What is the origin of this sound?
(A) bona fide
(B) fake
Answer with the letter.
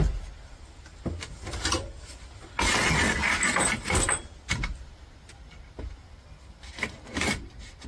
A